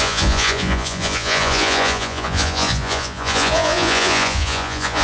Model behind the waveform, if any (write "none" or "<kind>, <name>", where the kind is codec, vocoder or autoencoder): vocoder, Vocos